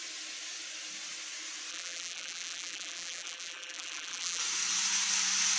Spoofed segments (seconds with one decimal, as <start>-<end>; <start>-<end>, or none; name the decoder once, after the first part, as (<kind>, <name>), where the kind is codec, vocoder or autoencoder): 1.7-4.4 (vocoder, BigVGAN v2)